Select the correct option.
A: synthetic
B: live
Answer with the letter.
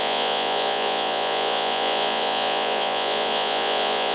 A